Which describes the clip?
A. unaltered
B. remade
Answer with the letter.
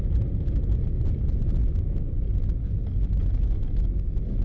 A